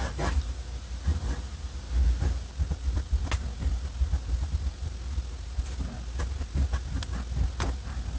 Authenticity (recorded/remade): recorded